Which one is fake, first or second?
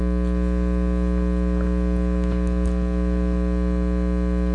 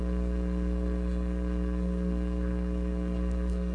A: second